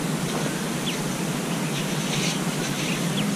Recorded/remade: recorded